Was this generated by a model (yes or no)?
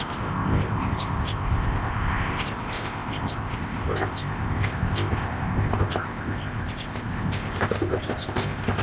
yes